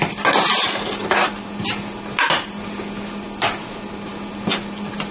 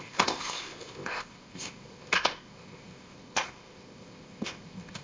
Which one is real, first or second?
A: first